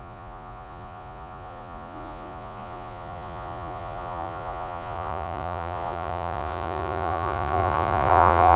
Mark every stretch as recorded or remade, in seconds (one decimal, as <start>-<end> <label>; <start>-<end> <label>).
0.0-8.6 remade